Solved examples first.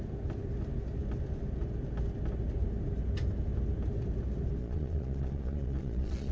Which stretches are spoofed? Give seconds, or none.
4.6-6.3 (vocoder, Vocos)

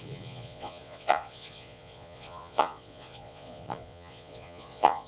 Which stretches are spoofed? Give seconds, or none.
0.0-5.1 (vocoder, Vocos)

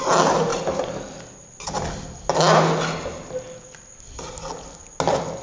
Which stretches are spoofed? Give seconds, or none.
none

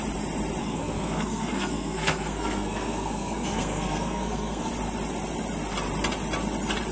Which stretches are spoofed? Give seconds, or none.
0.6-4.7 (codec, SNAC)